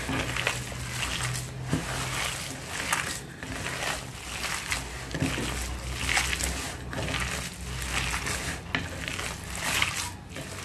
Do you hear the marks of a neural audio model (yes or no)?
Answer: no